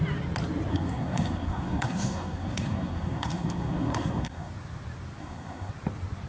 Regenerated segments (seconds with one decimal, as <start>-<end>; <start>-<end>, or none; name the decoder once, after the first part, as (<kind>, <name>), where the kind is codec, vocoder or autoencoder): 0.7-4.5 (codec, SNAC); 5.2-5.7